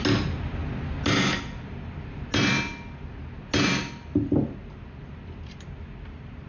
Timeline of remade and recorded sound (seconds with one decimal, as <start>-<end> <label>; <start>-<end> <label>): 0.0-6.5 recorded